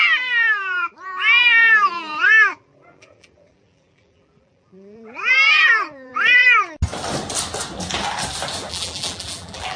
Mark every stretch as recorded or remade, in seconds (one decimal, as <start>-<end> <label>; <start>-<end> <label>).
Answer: 0.0-6.4 remade; 6.4-8.7 recorded; 8.7-9.8 remade